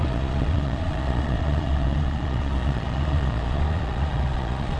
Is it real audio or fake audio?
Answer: fake